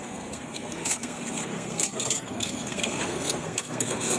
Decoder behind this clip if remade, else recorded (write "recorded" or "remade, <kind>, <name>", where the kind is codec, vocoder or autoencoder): remade, codec, SNAC